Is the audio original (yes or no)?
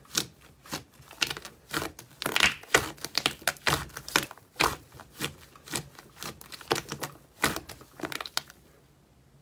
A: yes